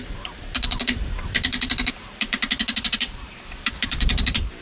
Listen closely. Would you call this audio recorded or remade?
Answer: remade